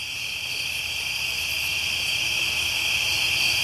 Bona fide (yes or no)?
yes